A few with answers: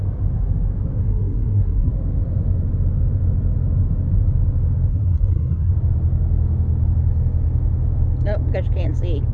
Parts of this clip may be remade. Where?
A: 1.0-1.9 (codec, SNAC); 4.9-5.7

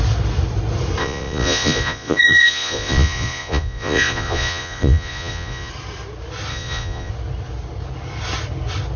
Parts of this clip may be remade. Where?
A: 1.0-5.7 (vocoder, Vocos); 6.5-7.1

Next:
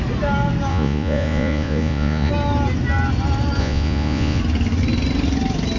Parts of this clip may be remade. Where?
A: 0.7-2.3 (vocoder, Vocos); 3.6-4.4

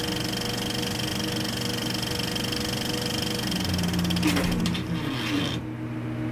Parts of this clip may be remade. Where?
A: none